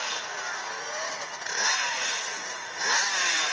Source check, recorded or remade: remade